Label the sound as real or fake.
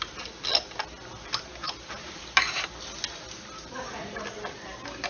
real